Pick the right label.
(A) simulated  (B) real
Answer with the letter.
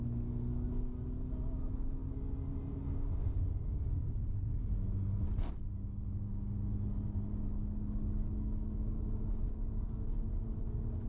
B